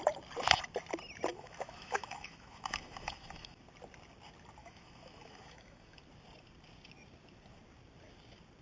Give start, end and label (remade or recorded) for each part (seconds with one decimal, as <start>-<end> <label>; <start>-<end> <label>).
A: 0.0-1.3 recorded; 1.3-3.6 remade; 3.6-4.6 recorded; 4.6-6.0 remade; 6.0-8.6 recorded